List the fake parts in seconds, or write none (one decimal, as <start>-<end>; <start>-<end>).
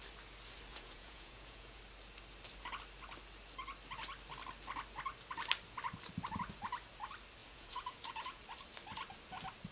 0.7-1.8; 7.4-8.4